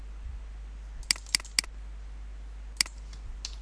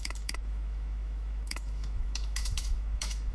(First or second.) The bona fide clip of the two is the first